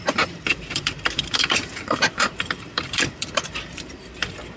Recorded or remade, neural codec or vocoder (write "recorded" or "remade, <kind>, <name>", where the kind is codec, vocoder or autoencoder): remade, vocoder, BigVGAN v2